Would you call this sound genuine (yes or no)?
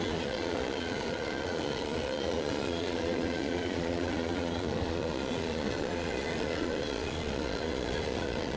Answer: no